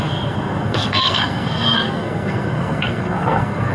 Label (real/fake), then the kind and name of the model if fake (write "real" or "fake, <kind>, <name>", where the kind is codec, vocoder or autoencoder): fake, codec, SNAC